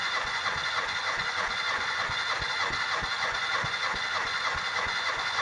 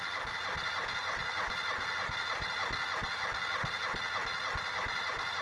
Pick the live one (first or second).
second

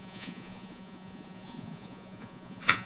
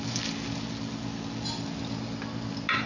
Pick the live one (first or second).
second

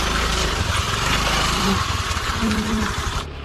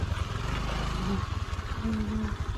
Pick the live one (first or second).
second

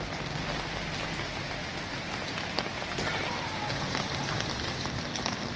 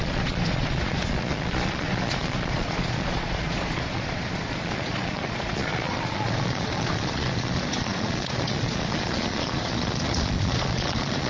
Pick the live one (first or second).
first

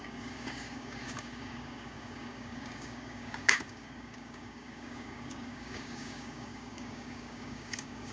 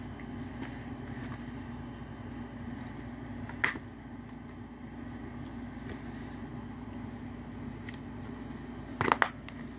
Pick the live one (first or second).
second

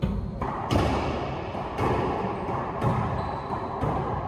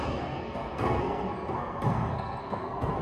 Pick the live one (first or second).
first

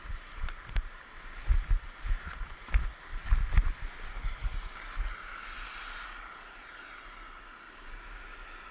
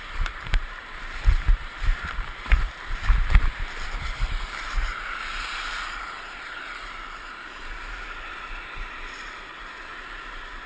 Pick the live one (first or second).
first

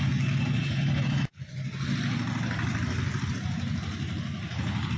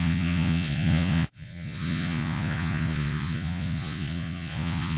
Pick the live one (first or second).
first